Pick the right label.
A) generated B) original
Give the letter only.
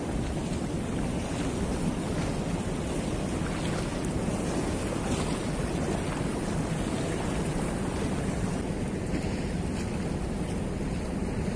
B